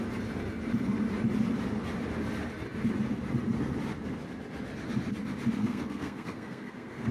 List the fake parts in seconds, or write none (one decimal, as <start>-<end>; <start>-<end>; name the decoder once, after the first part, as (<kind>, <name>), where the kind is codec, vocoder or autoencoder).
5.6-7.1 (codec, SNAC)